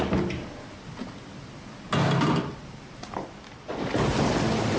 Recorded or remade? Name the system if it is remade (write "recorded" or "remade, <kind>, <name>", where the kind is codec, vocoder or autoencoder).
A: recorded